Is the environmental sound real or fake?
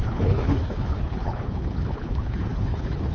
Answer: fake